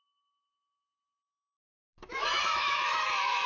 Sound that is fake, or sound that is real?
fake